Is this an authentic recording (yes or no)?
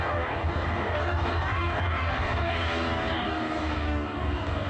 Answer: no